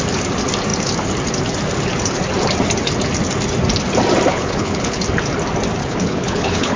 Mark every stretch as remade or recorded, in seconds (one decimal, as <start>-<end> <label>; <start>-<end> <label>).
0.0-4.3 recorded; 4.3-5.0 remade; 5.0-5.8 recorded; 5.8-6.8 remade